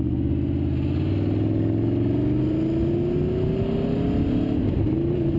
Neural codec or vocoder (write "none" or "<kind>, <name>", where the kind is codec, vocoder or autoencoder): none